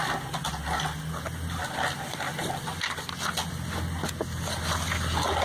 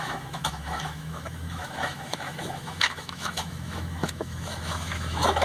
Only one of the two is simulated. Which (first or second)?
second